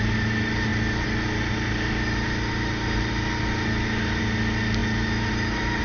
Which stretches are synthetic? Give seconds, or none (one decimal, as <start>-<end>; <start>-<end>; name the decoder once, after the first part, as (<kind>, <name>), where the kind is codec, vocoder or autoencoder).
none

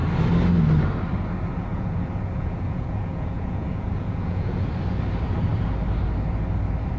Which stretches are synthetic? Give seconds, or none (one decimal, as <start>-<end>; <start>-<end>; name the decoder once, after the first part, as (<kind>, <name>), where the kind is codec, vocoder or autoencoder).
1.7-4.6 (vocoder, Vocos)

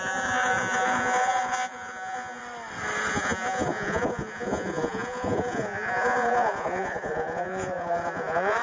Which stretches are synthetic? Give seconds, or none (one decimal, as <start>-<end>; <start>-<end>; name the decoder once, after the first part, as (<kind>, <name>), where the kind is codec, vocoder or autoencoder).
0.0-2.4 (vocoder, Vocos); 3.1-8.6

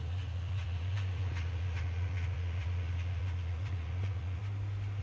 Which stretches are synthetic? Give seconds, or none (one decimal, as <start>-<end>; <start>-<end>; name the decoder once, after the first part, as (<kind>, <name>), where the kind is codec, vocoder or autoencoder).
0.0-4.4 (vocoder, Vocos)

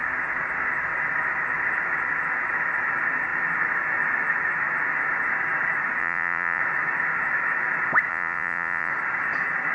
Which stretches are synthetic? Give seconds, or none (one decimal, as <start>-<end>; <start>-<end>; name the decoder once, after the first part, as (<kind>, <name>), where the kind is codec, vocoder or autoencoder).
6.0-6.6 (vocoder, Vocos); 8.1-8.9

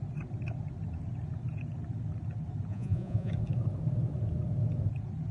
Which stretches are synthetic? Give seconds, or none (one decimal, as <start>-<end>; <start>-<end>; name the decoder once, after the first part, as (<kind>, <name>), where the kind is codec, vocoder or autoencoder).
2.7-3.3 (vocoder, Vocos)